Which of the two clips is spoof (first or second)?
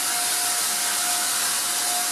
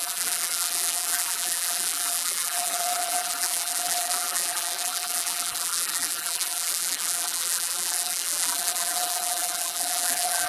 second